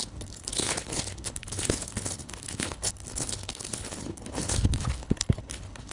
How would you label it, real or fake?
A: fake